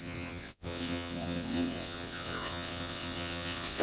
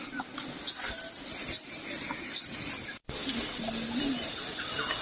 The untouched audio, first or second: second